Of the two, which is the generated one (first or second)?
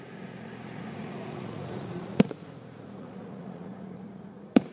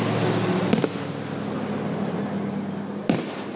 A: first